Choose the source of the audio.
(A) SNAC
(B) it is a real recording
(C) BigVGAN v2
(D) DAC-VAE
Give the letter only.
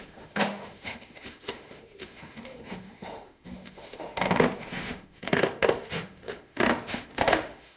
D